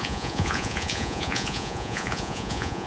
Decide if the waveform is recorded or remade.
remade